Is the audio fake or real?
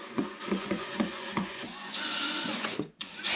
fake